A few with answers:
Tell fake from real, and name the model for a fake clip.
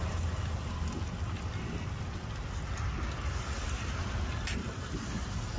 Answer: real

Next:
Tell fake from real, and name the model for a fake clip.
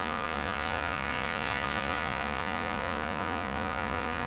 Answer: fake, vocoder, Vocos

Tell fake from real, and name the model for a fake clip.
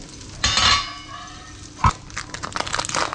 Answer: real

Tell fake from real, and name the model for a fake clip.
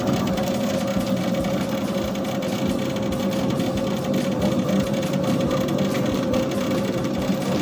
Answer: real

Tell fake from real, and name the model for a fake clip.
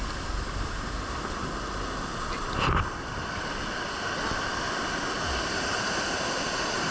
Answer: real